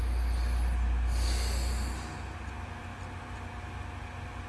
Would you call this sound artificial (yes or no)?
no